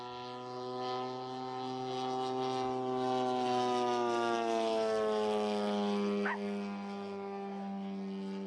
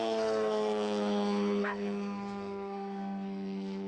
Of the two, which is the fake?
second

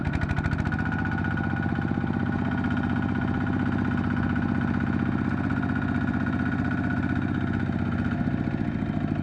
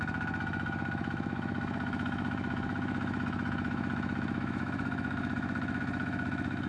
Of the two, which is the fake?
second